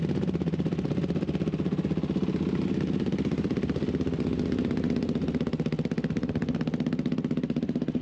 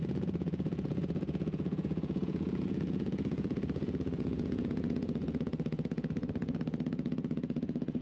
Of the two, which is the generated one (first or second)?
second